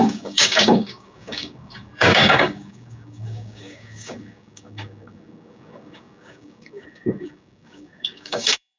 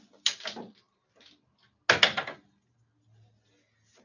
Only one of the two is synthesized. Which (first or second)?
first